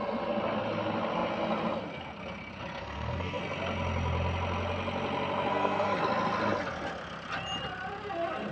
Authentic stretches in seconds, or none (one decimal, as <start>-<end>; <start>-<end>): 0.0-2.8; 3.4-5.5; 6.0-8.5